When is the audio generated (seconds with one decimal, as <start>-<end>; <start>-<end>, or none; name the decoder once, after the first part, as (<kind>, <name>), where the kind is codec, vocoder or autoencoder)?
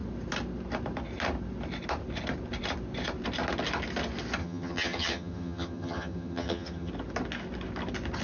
4.4-6.9 (vocoder, HiFi-GAN)